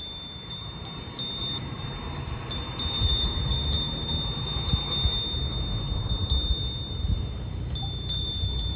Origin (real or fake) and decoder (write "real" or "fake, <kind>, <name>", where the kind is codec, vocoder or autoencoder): fake, vocoder, BigVGAN v2